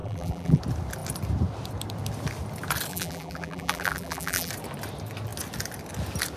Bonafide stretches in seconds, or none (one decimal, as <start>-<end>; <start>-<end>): 0.6-2.9; 4.5-6.4

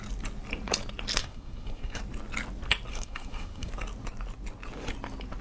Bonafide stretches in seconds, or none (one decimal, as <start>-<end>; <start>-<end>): 0.0-1.2; 2.0-2.9; 3.7-5.4

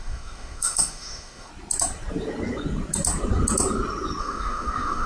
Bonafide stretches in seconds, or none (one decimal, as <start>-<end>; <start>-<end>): 1.5-4.2

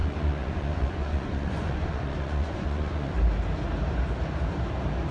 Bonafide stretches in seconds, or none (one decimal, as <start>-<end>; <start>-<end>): 3.1-5.1